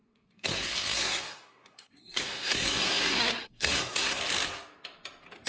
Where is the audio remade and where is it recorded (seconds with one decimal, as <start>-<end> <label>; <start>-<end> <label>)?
0.0-4.2 remade; 4.2-5.5 recorded